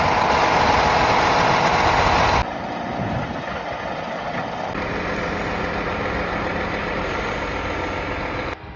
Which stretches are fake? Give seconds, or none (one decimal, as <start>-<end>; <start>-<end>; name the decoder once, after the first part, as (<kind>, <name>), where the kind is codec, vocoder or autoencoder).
none